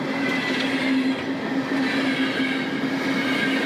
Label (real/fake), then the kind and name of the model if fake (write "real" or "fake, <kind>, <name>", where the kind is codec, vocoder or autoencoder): real